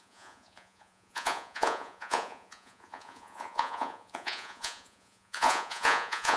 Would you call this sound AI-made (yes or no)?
yes